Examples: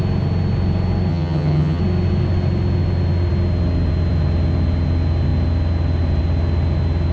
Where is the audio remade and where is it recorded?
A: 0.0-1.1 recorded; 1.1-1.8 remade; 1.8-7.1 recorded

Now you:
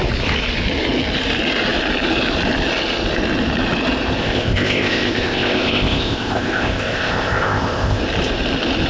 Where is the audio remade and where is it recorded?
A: 0.0-4.2 recorded; 4.2-8.0 remade; 8.0-8.9 recorded

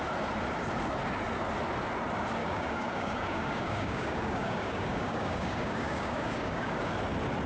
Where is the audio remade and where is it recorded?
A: 0.0-2.4 recorded; 2.4-6.9 remade; 6.9-7.5 recorded

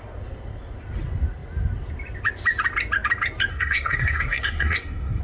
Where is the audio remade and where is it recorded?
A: 0.0-3.5 recorded; 3.5-5.2 remade

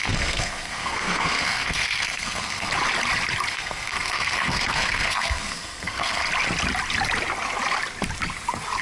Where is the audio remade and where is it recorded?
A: 0.0-2.7 remade; 2.7-3.5 recorded; 3.5-6.2 remade; 6.2-8.8 recorded

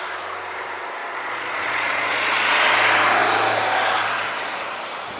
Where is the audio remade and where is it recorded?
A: 0.0-1.0 recorded; 1.0-2.4 remade; 2.4-5.2 recorded

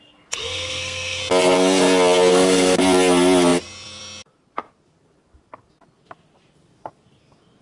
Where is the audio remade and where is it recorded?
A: 0.0-0.4 recorded; 0.4-1.2 remade; 1.2-2.3 recorded; 2.3-2.8 remade; 2.8-7.6 recorded

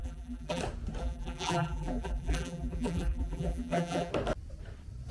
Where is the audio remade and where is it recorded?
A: 0.0-0.6 remade; 0.6-1.0 recorded; 1.0-4.1 remade; 4.1-5.1 recorded